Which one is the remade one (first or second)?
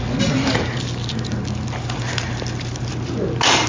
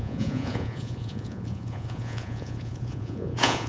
second